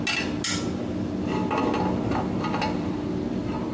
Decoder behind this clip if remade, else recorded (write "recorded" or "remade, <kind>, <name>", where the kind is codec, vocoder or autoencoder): recorded